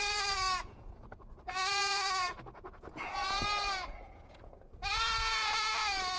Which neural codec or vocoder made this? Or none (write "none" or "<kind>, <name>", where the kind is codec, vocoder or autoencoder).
vocoder, Vocos